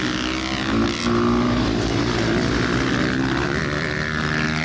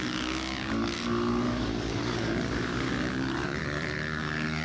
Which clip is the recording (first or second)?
first